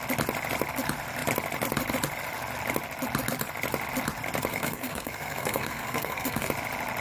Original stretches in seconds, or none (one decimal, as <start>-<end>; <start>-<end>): 0.0-4.5; 6.5-7.0